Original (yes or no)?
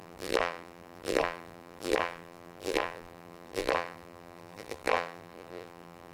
no